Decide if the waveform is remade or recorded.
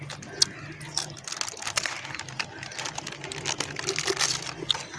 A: recorded